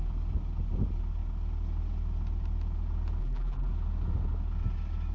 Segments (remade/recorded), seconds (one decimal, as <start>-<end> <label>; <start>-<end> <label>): 0.0-3.2 recorded; 3.2-3.7 remade; 3.7-5.1 recorded